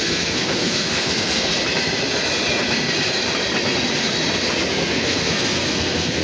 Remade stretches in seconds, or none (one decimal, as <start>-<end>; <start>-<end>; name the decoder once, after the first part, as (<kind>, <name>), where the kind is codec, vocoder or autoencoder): 0.0-1.5 (codec, SNAC); 4.7-6.2